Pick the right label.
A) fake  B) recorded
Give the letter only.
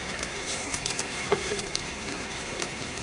A